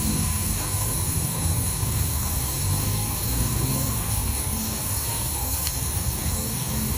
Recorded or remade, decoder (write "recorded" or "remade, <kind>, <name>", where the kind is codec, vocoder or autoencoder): remade, codec, DAC